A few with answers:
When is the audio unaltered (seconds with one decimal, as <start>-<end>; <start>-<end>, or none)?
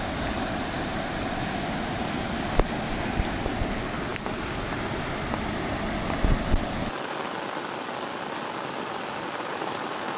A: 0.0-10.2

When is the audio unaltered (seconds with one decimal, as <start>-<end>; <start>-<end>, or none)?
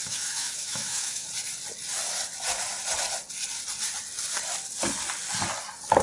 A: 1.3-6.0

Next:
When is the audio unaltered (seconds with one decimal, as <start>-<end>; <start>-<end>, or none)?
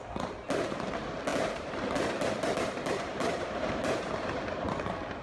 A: 0.0-1.3; 4.1-5.2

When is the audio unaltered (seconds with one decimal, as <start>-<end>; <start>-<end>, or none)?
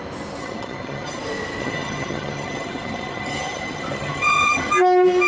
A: 0.0-0.4; 1.2-1.6; 4.7-5.3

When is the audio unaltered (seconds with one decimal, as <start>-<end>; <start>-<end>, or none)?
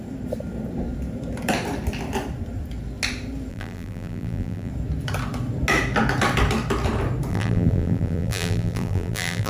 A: 0.0-3.5; 4.7-7.3